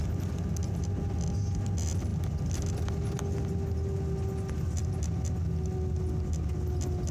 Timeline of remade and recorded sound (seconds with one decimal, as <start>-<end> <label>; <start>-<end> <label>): 0.0-7.1 recorded